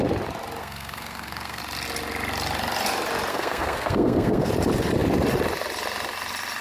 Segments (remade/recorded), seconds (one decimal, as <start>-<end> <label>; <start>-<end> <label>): 0.0-0.6 recorded; 0.6-1.6 remade; 1.6-3.3 recorded; 3.3-4.5 remade; 4.5-6.6 recorded